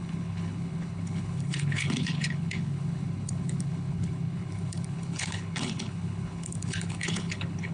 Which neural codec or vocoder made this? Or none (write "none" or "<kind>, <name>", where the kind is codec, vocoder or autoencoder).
codec, HILCodec